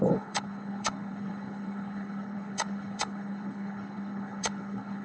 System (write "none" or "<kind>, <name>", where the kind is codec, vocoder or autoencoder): codec, HILCodec